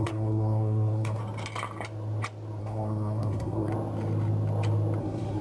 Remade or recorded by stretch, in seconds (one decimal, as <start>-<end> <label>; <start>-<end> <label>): 0.0-1.2 remade; 1.2-2.6 recorded; 2.6-3.7 remade; 3.7-5.0 recorded; 5.0-5.4 remade